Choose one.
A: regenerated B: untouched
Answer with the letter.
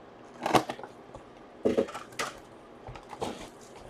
B